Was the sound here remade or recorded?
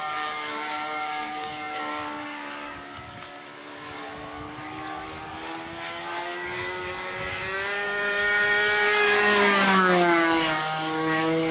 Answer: remade